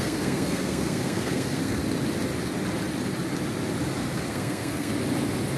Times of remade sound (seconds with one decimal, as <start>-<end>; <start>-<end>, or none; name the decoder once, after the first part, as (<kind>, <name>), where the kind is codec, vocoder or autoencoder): 0.0-1.8 (codec, SNAC); 4.3-4.9